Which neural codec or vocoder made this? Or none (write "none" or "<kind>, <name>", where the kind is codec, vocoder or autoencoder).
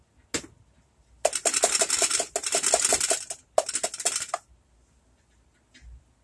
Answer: none